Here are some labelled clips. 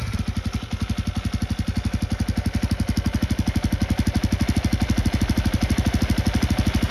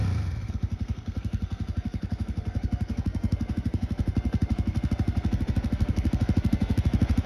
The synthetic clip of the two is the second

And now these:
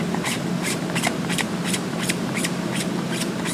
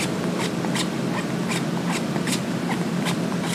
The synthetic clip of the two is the first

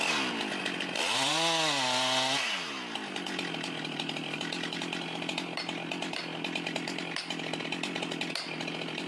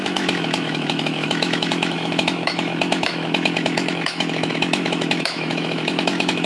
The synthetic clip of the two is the second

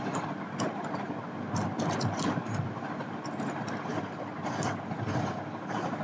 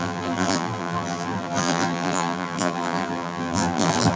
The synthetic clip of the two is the second